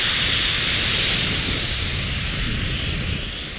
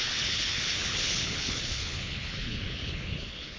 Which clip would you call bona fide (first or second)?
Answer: first